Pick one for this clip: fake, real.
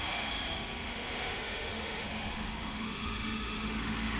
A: fake